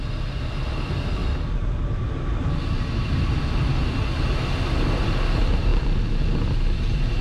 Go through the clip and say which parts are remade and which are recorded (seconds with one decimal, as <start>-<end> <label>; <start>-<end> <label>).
0.0-7.2 recorded